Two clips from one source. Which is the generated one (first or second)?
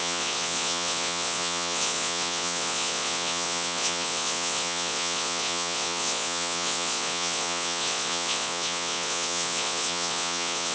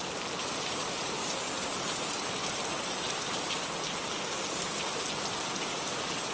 first